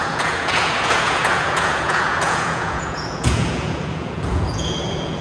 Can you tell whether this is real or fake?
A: fake